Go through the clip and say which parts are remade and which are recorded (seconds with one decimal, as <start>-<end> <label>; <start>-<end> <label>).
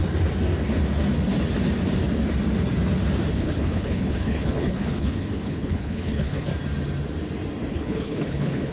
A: 0.0-3.3 recorded; 3.3-6.5 remade; 6.5-7.7 recorded; 7.7-8.7 remade